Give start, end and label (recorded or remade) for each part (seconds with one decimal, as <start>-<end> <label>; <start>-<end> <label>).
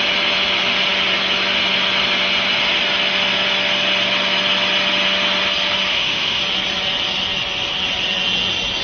0.0-5.9 recorded; 5.9-6.4 remade; 6.4-8.8 recorded